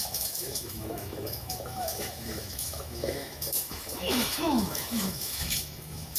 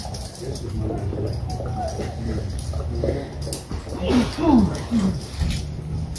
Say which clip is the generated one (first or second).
first